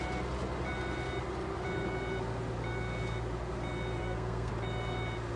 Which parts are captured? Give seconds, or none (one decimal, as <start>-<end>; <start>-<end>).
0.0-4.0; 4.5-5.4